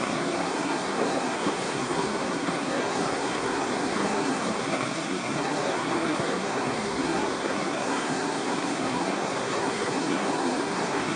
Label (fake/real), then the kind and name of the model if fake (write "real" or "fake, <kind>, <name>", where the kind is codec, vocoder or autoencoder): fake, codec, SNAC